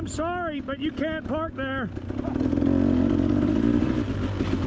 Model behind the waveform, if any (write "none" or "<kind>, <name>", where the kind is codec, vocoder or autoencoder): none